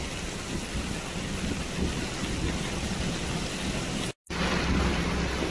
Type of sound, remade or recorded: recorded